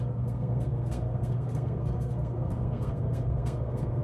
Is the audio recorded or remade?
remade